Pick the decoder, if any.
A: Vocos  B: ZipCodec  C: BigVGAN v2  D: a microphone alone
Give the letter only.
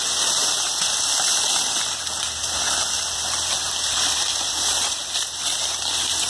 D